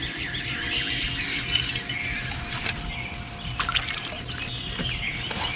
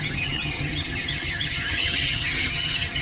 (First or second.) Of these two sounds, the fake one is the second